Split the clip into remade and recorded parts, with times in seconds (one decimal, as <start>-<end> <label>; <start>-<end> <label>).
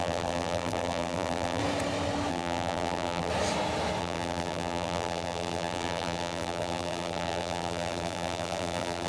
0.0-1.6 remade; 1.6-2.3 recorded; 2.3-3.3 remade; 3.3-4.0 recorded; 4.0-9.1 remade